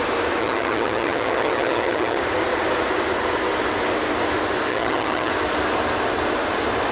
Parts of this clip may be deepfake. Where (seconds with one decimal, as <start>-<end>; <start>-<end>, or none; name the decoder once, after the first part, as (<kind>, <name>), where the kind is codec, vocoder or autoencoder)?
0.4-2.2 (vocoder, HiFi-GAN); 4.7-5.3